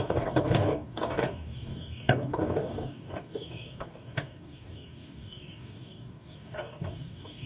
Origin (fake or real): fake